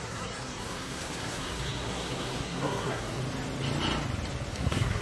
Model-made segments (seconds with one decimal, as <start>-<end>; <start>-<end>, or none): 0.0-3.2; 4.5-5.0